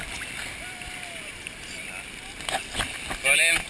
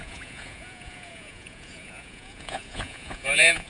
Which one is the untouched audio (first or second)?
first